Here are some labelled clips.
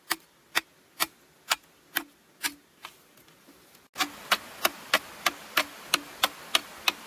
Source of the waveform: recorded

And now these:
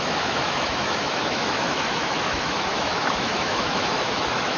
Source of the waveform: remade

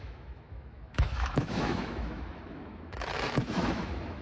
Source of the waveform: remade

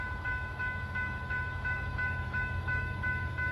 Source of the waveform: remade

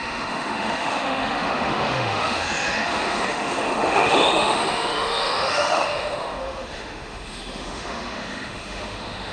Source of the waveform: remade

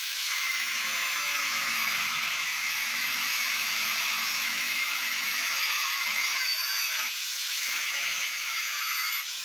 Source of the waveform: remade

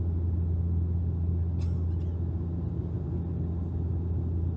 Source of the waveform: recorded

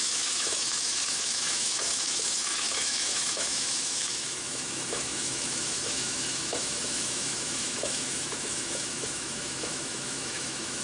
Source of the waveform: remade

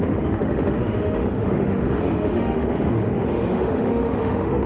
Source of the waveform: remade